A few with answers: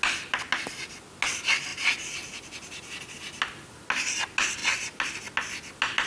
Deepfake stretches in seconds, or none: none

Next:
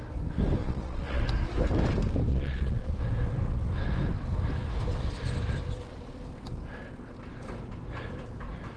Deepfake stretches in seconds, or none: 0.6-1.2; 2.3-2.9

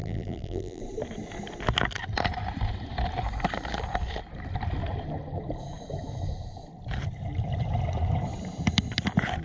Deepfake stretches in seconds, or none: 0.0-0.8